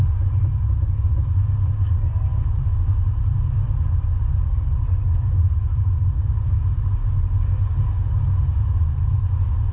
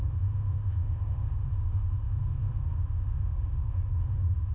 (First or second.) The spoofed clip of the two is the second